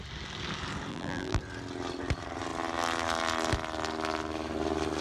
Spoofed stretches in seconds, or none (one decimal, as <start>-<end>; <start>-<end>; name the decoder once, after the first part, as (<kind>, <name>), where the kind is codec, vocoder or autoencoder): 0.9-1.4 (vocoder, BigVGAN v2)